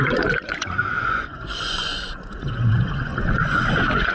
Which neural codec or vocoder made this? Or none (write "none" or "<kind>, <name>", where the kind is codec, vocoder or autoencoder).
vocoder, Vocos